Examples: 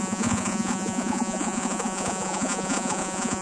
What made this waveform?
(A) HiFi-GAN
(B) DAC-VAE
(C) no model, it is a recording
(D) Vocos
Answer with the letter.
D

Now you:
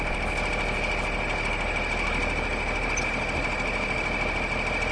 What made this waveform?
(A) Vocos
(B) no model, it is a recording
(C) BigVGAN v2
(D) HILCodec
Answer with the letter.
B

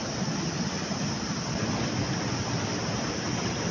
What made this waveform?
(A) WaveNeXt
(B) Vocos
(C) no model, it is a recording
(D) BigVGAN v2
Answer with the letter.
C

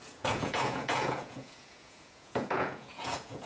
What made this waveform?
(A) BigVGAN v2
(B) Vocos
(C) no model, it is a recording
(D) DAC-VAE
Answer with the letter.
B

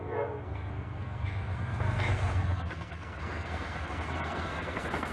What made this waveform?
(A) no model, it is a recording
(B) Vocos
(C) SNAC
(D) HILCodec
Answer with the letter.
C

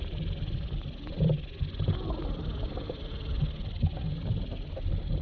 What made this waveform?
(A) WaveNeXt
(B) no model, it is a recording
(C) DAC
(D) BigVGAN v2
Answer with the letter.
B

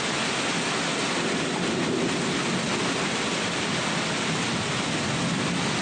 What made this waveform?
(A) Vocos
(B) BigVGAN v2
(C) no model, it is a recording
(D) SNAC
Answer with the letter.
C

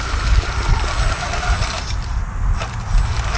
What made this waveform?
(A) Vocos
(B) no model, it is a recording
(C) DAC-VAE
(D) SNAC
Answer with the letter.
B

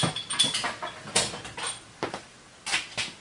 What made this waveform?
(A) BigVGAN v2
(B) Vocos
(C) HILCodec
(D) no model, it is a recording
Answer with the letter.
D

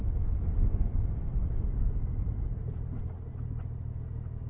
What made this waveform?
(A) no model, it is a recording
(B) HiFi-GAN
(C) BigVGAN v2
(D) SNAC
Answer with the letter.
A